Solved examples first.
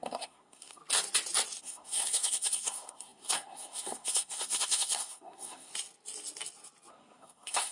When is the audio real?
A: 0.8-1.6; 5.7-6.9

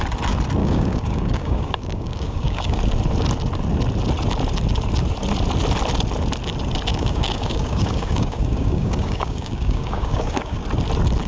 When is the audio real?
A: 0.0-0.6; 2.8-6.9; 10.6-11.3